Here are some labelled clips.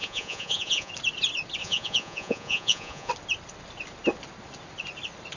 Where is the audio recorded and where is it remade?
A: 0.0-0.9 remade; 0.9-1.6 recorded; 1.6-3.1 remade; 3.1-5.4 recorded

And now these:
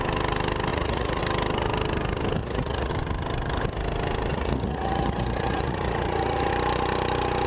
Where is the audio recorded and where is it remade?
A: 0.0-0.7 recorded; 0.7-1.2 remade; 1.2-2.4 recorded; 2.4-2.9 remade; 2.9-4.3 recorded; 4.3-6.5 remade; 6.5-7.5 recorded